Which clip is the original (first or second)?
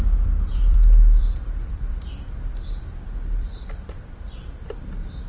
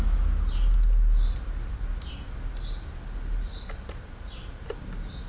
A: second